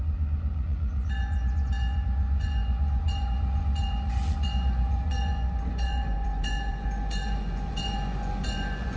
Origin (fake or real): fake